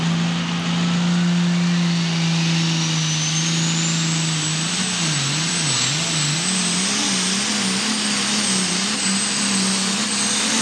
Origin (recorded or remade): recorded